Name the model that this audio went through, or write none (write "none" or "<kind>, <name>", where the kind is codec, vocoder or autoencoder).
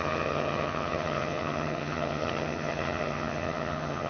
vocoder, HiFi-GAN